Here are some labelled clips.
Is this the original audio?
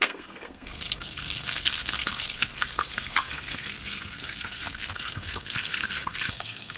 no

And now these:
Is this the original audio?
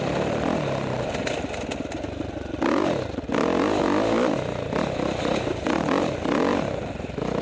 yes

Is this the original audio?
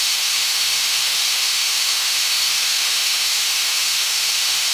no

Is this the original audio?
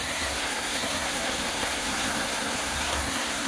no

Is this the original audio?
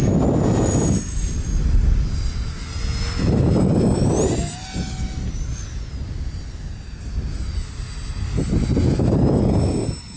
yes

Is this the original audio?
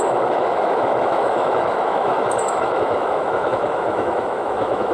no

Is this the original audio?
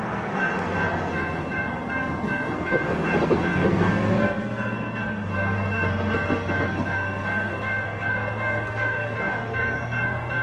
no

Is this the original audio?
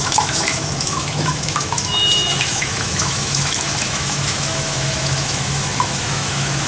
no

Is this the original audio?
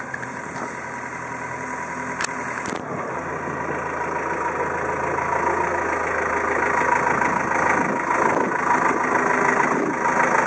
yes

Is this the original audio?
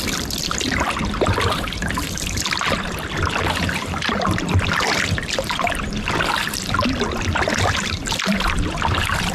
no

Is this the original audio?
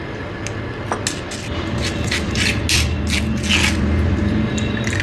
yes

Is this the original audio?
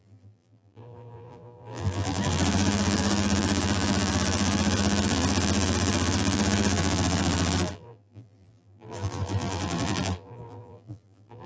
no